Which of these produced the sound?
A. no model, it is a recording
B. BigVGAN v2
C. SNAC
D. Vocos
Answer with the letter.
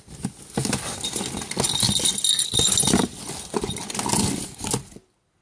A